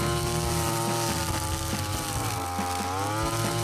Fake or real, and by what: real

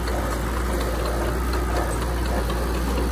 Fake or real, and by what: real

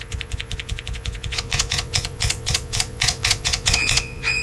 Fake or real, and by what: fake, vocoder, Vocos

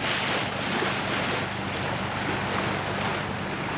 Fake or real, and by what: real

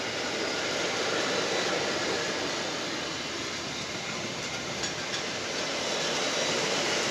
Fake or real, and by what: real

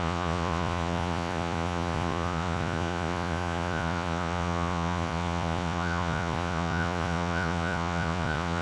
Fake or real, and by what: fake, vocoder, Vocos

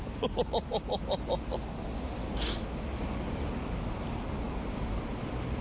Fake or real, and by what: real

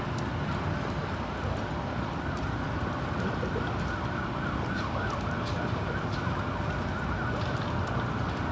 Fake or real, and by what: real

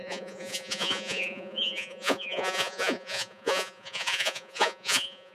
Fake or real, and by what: fake, vocoder, Vocos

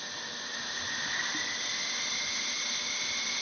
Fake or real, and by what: real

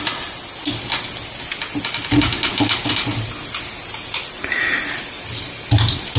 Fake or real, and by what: real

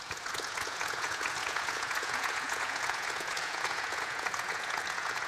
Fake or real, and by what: fake, vocoder, Vocos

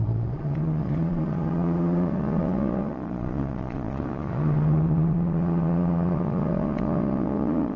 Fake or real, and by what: fake, vocoder, Vocos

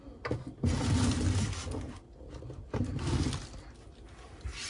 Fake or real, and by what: real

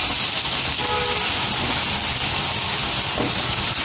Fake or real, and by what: real